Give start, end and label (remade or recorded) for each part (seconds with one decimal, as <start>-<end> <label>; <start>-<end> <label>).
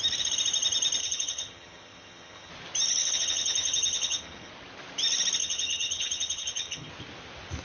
0.0-1.0 recorded; 1.0-2.5 remade; 2.5-3.0 recorded; 3.0-4.5 remade; 4.5-5.4 recorded; 5.4-6.9 remade; 6.9-7.6 recorded